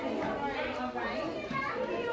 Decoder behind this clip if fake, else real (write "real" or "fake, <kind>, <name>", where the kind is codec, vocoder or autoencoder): real